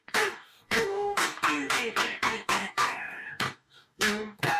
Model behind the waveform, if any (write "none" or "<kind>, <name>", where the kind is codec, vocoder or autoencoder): codec, DAC